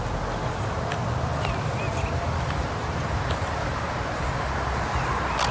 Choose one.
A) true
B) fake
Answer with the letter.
A